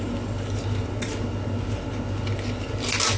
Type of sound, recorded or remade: recorded